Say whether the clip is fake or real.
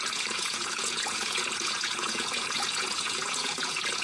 fake